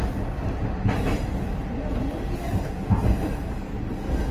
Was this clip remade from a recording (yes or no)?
no